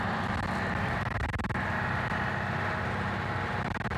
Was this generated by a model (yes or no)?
no